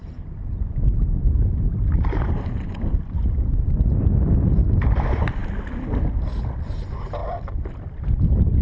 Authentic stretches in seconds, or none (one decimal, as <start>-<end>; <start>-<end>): 5.4-6.7